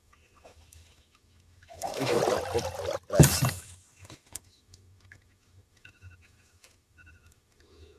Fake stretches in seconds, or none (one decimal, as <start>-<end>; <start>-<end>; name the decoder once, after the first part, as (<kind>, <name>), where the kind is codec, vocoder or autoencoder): 0.0-2.2 (autoencoder, DAC-VAE); 3.5-8.0